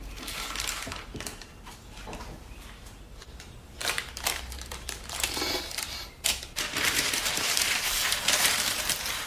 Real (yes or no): no